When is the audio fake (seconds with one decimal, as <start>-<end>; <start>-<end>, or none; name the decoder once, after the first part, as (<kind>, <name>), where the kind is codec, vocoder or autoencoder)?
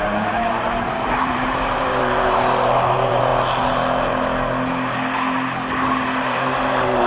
0.0-3.3 (vocoder, BigVGAN v2); 6.2-7.1